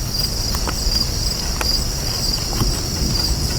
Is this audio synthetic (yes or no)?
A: no